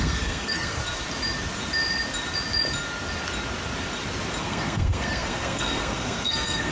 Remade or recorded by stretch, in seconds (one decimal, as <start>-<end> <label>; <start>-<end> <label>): 0.0-0.8 remade; 0.8-4.4 recorded; 4.4-6.7 remade